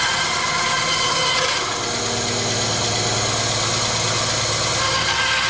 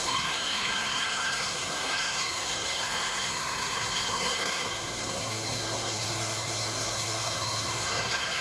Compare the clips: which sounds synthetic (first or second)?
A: second